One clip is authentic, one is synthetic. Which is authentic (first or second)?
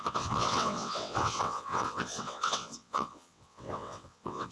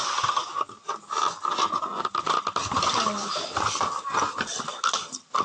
second